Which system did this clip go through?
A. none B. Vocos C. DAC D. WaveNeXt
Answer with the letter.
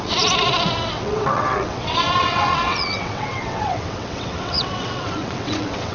D